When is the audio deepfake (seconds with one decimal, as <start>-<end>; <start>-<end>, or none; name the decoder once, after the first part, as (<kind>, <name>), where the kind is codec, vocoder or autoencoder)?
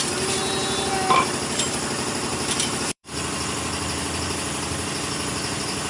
2.3-3.2 (vocoder, BigVGAN v2)